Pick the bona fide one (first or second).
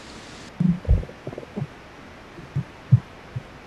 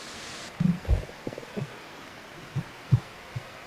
first